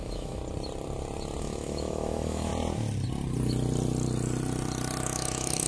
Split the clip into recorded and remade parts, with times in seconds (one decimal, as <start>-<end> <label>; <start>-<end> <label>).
0.0-0.4 remade; 0.4-1.4 recorded; 1.4-2.5 remade; 2.5-5.0 recorded; 5.0-5.7 remade